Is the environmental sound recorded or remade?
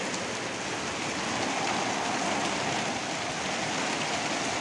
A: recorded